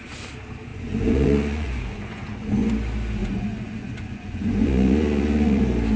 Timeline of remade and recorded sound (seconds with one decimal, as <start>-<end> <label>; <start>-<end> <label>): 0.0-0.7 recorded; 0.7-2.7 remade; 2.7-3.2 recorded; 3.2-5.6 remade; 5.6-6.0 recorded